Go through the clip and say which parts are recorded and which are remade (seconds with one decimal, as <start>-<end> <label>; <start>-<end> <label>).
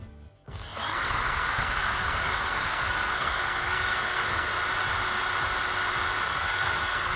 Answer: 0.0-4.5 remade; 4.5-6.2 recorded; 6.2-7.2 remade